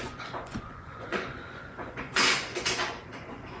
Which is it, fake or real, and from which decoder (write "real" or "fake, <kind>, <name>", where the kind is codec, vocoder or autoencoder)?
fake, vocoder, Vocos